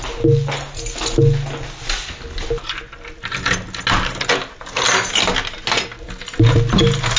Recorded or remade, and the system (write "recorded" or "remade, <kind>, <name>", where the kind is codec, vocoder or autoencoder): recorded